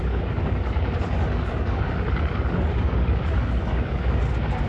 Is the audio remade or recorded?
remade